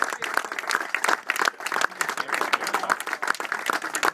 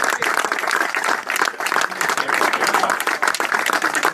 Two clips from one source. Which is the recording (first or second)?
first